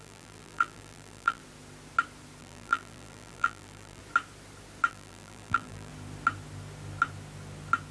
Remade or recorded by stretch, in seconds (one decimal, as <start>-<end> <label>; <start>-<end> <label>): 0.0-1.4 remade; 1.4-2.4 recorded; 2.4-4.0 remade; 4.0-4.9 recorded; 4.9-5.9 remade; 5.9-7.9 recorded